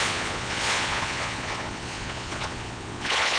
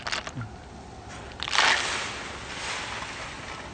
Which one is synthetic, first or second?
first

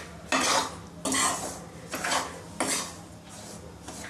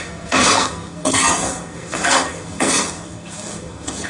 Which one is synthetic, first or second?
second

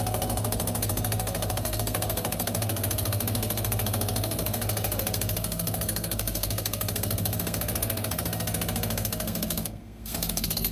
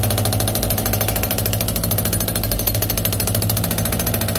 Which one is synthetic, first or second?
first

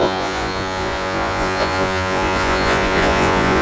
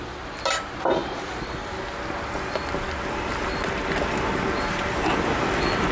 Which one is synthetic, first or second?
first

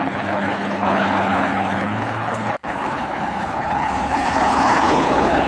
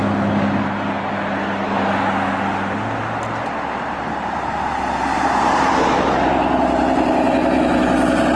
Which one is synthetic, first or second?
first